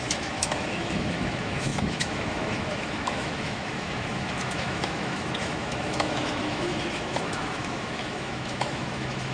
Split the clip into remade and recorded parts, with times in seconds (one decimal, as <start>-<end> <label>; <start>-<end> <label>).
0.0-9.3 remade